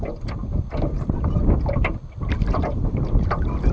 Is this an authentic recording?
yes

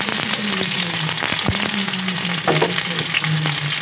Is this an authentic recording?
yes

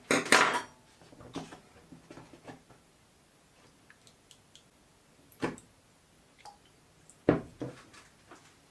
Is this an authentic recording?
yes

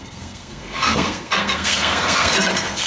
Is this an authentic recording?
no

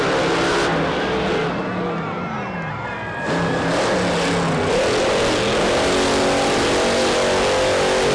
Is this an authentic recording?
yes